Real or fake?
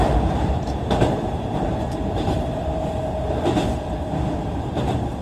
fake